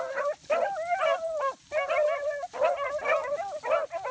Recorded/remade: recorded